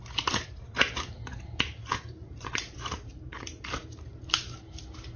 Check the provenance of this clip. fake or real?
fake